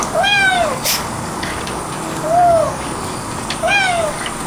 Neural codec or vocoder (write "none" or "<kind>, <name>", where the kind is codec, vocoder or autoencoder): codec, DAC